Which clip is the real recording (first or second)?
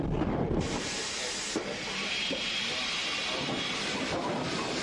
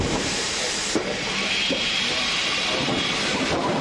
first